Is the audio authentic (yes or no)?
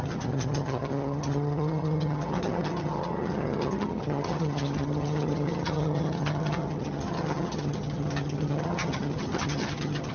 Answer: no